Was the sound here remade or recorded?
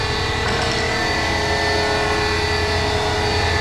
recorded